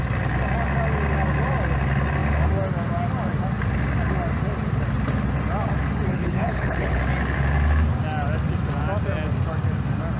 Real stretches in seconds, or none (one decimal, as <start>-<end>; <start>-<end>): 0.0-6.1; 7.0-10.2